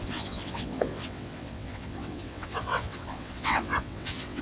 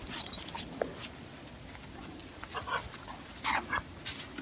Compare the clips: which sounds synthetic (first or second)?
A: first